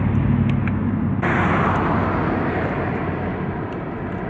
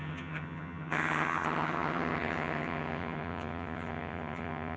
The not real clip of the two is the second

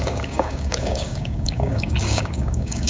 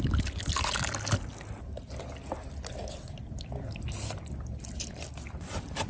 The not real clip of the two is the first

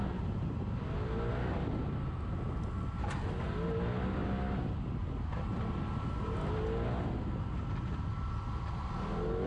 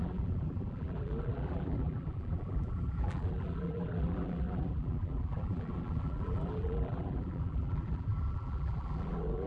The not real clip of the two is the second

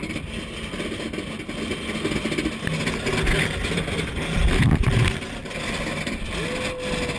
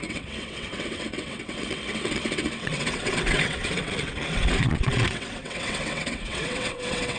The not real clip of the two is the second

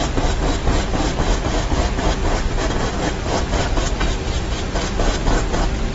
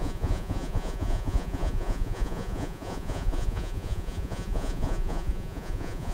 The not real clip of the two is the second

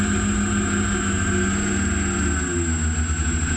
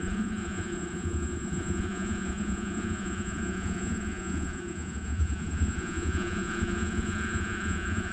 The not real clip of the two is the second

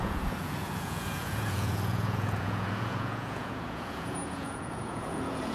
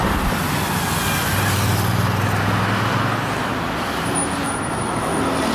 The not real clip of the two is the first